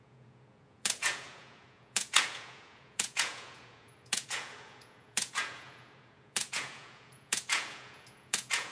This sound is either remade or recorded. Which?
remade